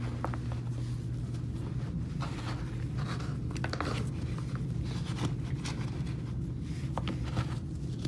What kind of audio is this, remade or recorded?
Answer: recorded